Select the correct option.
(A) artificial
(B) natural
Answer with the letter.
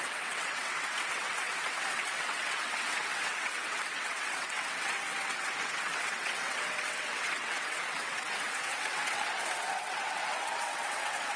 A